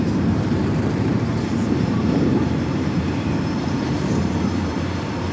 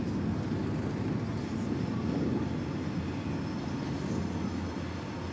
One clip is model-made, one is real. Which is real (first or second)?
second